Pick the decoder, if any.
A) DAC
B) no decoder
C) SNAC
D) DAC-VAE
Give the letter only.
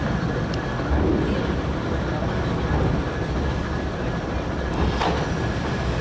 B